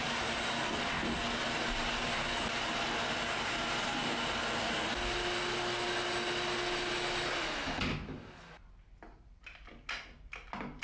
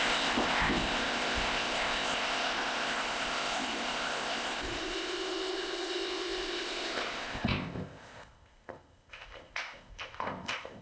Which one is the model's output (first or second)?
second